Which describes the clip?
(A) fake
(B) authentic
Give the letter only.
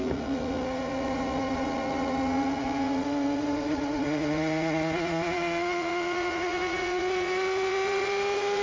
A